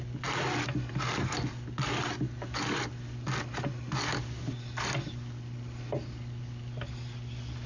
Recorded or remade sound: recorded